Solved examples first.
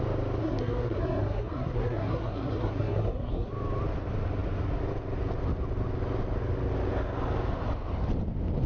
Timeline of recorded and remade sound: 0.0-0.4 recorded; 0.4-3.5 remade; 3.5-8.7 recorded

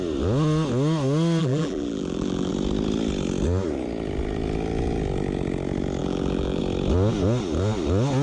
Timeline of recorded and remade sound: 0.0-1.4 recorded; 1.4-2.5 remade; 2.5-6.0 recorded; 6.0-6.6 remade; 6.6-8.2 recorded

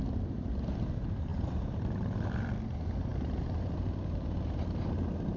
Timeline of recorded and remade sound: 0.0-1.3 recorded; 1.3-2.5 remade; 2.5-3.1 recorded; 3.1-3.9 remade; 3.9-5.4 recorded

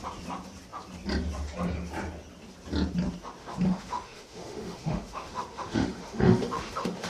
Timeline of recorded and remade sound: 0.0-3.4 recorded; 3.4-7.1 remade

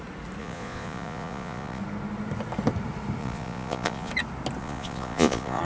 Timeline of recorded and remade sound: 0.0-0.4 recorded; 0.4-1.8 remade; 1.8-3.2 recorded; 3.2-4.1 remade; 4.1-4.6 recorded; 4.6-5.6 remade

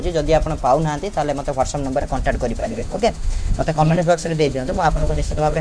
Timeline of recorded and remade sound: 0.0-2.6 recorded; 2.6-5.6 remade